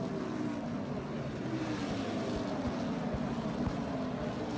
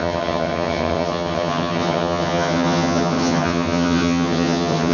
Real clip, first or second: first